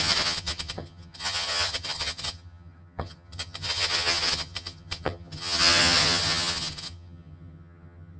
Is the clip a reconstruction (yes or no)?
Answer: yes